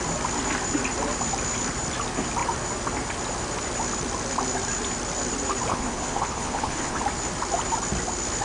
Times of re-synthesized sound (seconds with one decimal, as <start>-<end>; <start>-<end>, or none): 5.7-7.0